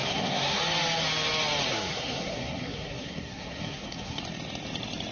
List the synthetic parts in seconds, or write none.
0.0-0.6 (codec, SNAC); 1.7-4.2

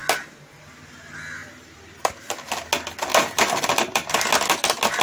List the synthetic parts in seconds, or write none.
1.4-2.4 (vocoder, BigVGAN v2); 3.1-4.3

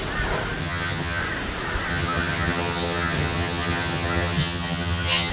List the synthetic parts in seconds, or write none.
0.6-1.2 (vocoder, HiFi-GAN); 1.9-5.3

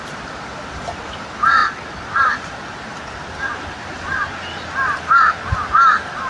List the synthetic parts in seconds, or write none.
none

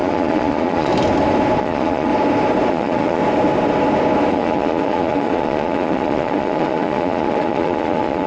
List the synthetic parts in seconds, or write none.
0.0-0.9 (vocoder, Vocos); 1.6-2.1; 2.7-3.2; 4.3-8.3